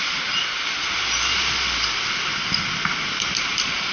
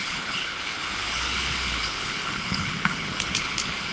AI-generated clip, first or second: second